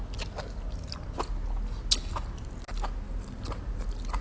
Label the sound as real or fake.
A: real